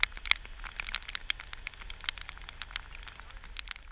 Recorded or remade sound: recorded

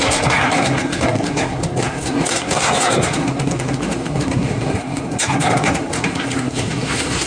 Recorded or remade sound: remade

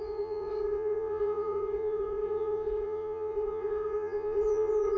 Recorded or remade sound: remade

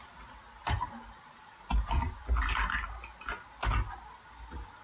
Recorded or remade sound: recorded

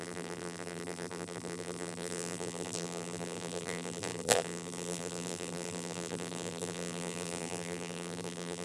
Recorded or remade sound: remade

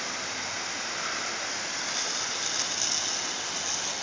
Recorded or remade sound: recorded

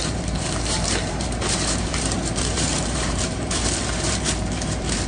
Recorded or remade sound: remade